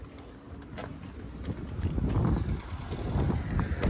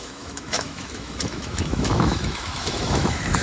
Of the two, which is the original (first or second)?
first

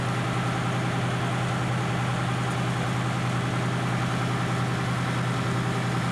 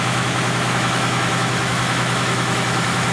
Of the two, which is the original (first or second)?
first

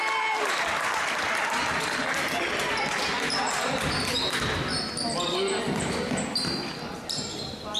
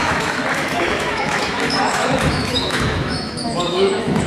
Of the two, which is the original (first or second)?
first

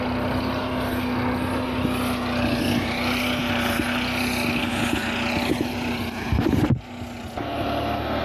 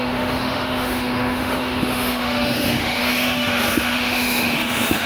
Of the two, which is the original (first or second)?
first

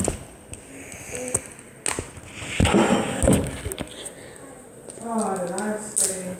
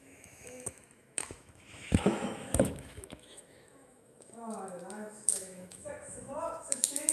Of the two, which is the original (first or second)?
first